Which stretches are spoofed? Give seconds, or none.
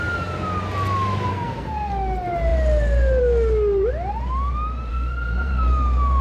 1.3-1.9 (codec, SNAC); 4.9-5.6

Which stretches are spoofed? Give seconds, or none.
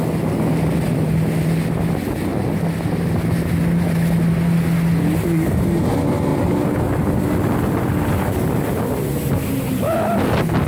none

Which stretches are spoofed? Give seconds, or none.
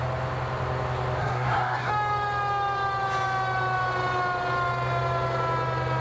1.2-1.9 (codec, SNAC)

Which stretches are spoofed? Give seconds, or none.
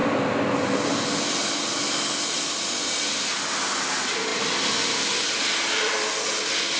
none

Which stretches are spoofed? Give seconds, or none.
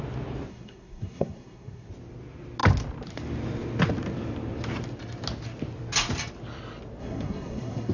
0.5-1.9 (codec, SNAC); 7.0-7.9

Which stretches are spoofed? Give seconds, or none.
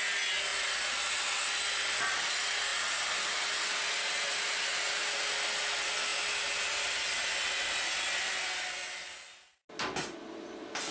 none